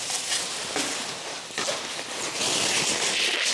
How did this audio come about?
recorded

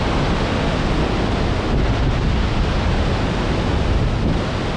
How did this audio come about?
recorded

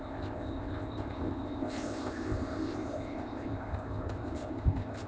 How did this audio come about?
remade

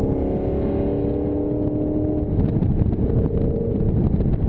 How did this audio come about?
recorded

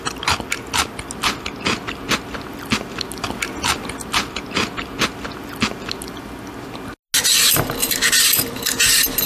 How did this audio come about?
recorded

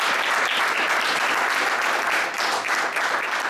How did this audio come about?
recorded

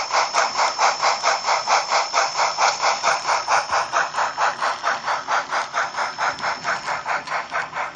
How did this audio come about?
recorded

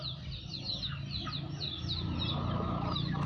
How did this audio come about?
recorded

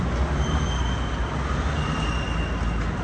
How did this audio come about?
recorded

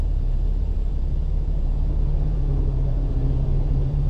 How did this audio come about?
remade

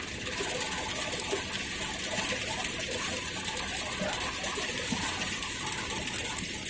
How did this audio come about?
recorded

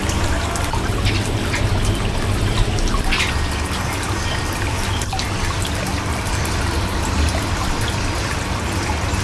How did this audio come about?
recorded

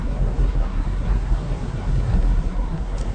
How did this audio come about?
remade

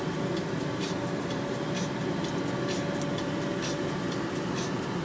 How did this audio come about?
recorded